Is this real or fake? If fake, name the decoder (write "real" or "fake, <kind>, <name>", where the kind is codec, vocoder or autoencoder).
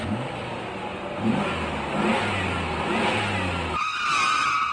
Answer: real